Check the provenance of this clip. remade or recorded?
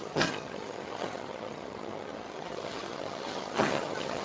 remade